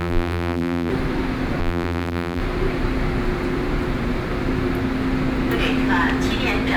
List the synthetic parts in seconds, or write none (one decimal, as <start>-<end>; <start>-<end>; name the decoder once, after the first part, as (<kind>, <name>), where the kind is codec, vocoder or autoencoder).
0.0-0.9 (vocoder, BigVGAN v2); 1.6-2.4